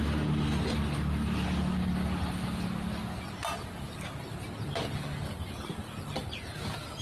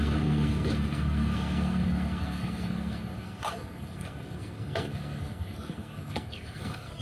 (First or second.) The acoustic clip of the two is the first